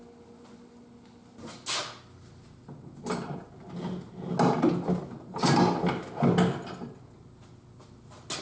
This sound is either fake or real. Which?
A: real